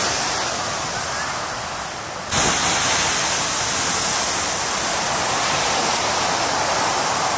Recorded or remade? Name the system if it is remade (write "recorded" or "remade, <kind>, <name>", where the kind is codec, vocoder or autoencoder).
recorded